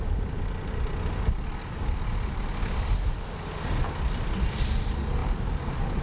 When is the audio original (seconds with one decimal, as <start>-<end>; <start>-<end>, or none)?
0.0-6.0